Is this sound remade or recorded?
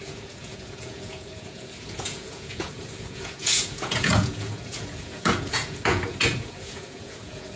remade